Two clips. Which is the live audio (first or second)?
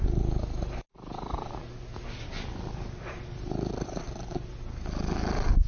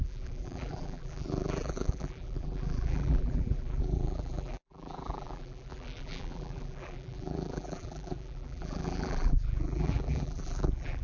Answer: first